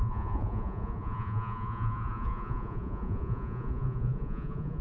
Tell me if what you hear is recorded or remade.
remade